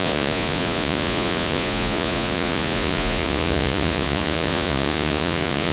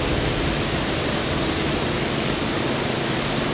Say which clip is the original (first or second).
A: second